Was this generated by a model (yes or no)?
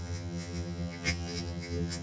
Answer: yes